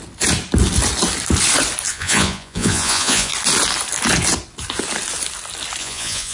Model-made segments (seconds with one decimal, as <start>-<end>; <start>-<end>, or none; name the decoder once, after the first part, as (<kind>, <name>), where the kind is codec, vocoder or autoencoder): 1.9-3.3 (vocoder, Vocos); 5.8-6.3